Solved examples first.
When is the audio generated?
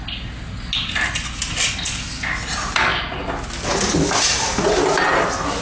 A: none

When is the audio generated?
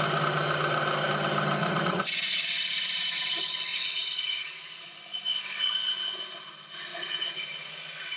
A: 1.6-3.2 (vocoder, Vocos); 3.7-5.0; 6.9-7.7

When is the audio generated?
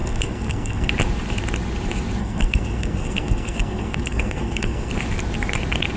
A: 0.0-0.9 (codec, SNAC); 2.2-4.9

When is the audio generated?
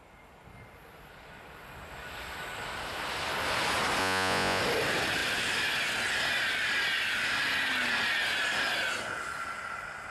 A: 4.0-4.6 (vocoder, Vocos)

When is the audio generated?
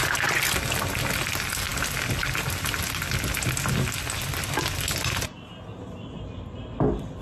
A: none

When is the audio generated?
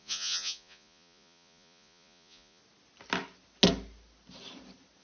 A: 0.0-2.6 (vocoder, Vocos)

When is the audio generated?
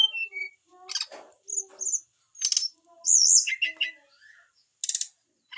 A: none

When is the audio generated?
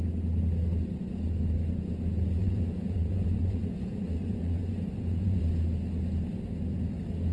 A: 2.4-5.4 (vocoder, Vocos)